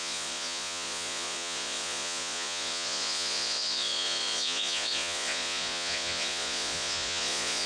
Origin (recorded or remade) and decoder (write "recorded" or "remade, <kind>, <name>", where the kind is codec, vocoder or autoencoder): remade, vocoder, Vocos